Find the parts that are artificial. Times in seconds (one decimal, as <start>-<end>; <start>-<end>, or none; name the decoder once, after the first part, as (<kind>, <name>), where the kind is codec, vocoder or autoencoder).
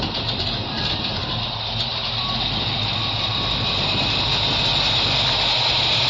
none